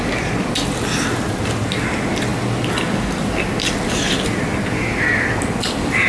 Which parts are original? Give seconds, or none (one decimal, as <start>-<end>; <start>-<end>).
0.0-6.1